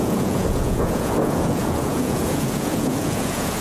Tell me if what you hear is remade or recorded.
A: remade